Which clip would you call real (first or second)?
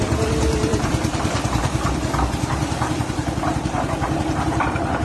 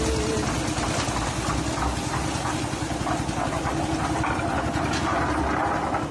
second